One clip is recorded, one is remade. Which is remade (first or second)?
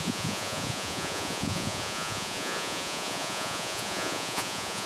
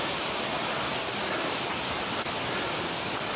first